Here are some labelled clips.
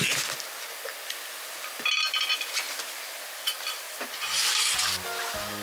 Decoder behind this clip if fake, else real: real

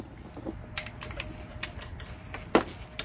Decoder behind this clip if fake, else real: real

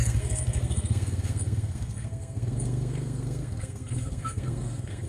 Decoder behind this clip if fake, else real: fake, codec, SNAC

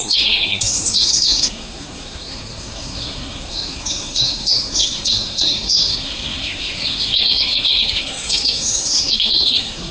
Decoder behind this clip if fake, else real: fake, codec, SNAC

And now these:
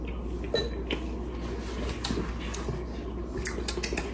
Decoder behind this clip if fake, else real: real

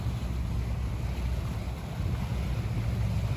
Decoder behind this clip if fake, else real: real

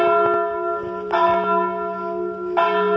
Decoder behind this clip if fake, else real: real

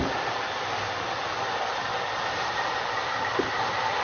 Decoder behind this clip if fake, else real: real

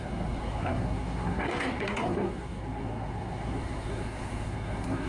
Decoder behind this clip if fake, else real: fake, codec, SNAC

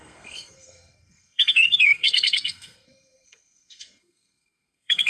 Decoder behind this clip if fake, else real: fake, codec, SNAC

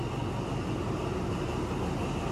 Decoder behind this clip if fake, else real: real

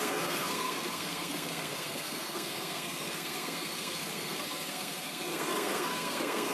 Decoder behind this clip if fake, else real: fake, codec, SNAC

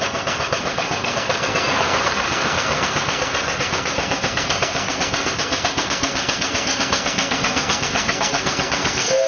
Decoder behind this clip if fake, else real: fake, codec, SNAC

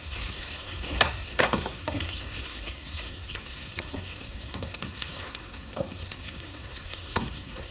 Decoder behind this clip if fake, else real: fake, codec, SNAC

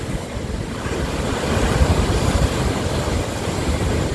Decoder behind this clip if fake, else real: real